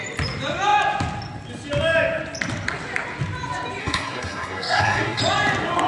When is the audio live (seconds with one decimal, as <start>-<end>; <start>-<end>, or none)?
0.0-3.8; 5.2-5.9